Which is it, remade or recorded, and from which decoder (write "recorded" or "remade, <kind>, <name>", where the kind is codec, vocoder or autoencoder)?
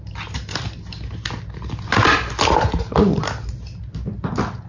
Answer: recorded